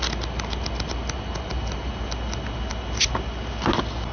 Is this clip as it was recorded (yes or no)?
yes